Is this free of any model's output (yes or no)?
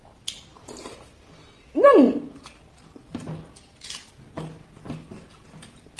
yes